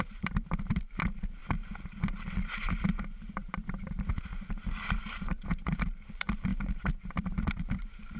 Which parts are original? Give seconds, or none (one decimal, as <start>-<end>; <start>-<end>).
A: 1.4-2.0; 4.3-5.0